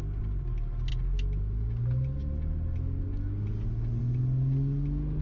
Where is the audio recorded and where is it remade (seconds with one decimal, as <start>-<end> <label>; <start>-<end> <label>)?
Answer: 0.0-5.2 recorded